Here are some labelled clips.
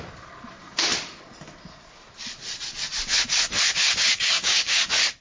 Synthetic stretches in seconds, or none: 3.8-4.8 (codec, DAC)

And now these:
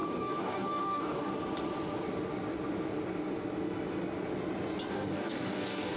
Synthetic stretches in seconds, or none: 0.0-1.3 (codec, DAC); 4.9-6.0

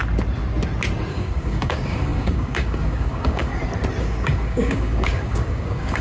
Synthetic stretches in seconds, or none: 1.1-3.5 (codec, DAC); 4.0-6.0

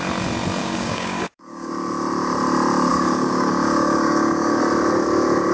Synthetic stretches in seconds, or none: 0.6-1.7 (codec, DAC); 2.9-4.6

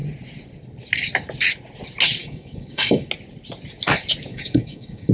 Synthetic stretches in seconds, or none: 2.2-3.1 (codec, DAC); 4.3-5.1

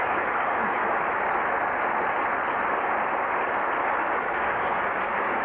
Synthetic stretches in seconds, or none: 0.0-0.8 (codec, DAC); 4.0-5.4

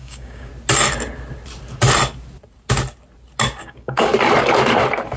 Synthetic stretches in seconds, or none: 0.0-0.5 (codec, DAC); 3.6-4.1